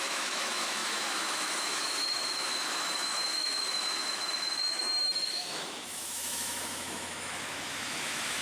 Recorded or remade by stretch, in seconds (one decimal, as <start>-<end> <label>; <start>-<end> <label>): 0.0-8.4 remade